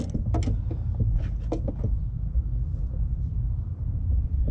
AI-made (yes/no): no